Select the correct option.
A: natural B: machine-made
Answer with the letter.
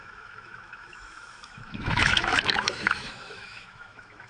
B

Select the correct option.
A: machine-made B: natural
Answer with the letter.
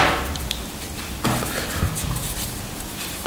B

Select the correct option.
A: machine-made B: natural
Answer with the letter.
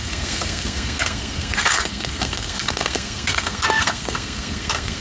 A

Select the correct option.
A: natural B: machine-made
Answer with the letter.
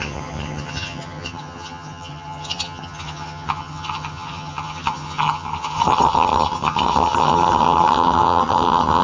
B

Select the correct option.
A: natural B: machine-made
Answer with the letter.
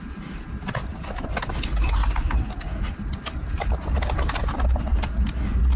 A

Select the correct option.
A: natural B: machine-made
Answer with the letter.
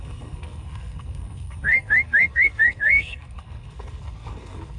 B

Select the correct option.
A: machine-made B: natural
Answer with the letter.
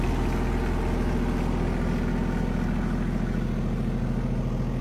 B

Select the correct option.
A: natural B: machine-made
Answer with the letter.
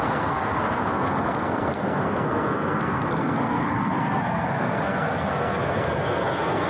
B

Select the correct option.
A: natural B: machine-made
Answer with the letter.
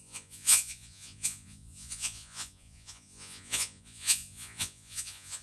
B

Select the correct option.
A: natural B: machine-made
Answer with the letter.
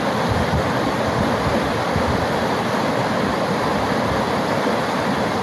A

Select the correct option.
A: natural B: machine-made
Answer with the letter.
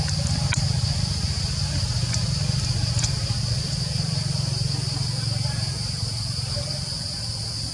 A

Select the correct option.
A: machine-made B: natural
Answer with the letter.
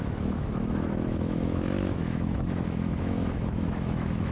A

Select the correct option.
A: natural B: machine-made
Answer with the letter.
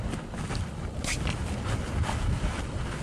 A